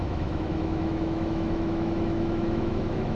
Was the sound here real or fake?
fake